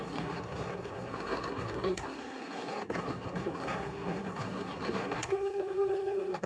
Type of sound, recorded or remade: remade